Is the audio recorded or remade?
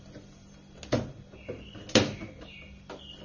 recorded